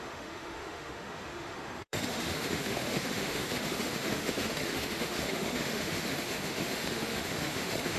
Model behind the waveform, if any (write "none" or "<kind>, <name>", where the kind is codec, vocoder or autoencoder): autoencoder, DAC-VAE